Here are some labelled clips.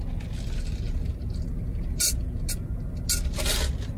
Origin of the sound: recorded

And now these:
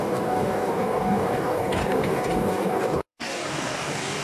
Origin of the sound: remade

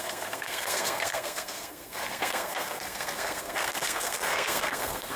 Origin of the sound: remade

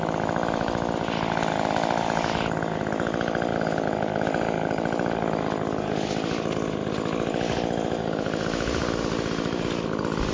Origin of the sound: recorded